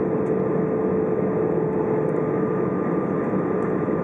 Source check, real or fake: real